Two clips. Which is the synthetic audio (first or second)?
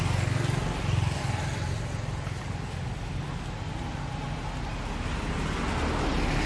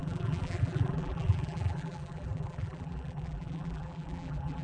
second